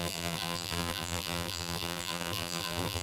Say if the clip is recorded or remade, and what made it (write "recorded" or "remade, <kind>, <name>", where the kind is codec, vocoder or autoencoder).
remade, vocoder, BigVGAN v2